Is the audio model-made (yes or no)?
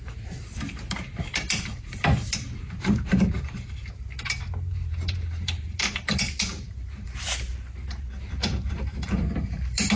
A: yes